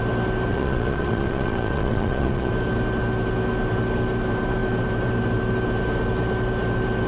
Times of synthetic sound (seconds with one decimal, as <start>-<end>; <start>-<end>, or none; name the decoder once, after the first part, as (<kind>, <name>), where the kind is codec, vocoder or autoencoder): 0.5-2.5 (vocoder, Vocos)